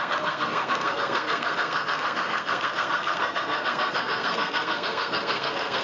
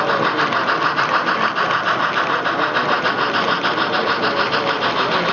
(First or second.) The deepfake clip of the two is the first